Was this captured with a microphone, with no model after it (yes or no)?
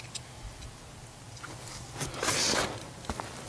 yes